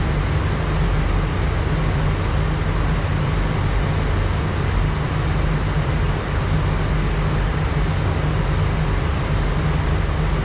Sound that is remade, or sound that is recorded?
recorded